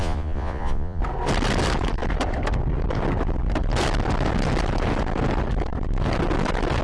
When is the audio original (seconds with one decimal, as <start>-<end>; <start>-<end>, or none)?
1.0-6.8